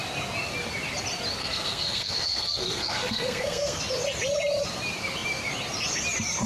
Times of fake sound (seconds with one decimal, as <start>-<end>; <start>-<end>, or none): 1.4-3.8